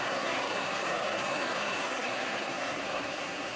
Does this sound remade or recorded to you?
remade